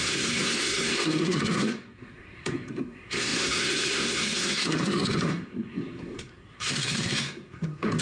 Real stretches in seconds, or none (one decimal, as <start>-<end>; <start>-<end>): none